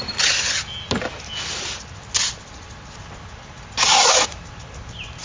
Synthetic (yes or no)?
no